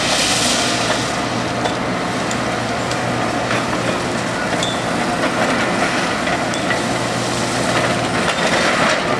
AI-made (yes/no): no